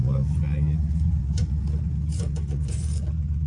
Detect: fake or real fake